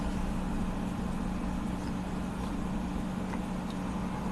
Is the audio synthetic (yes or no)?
no